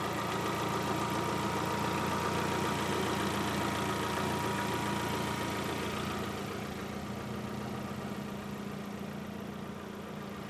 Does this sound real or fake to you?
real